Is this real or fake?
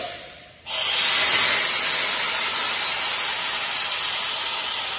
real